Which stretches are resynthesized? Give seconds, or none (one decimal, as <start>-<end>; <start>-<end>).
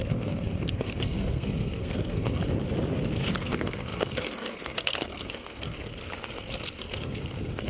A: 0.0-2.4; 3.3-5.9; 6.8-7.7